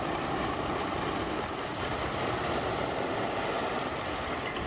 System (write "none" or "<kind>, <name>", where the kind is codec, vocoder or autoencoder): none